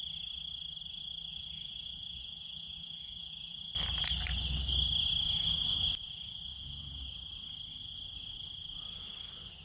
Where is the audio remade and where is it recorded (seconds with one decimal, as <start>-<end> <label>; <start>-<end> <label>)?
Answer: 0.0-1.3 recorded; 1.3-3.7 remade; 3.7-6.5 recorded; 6.5-7.0 remade; 7.0-9.6 recorded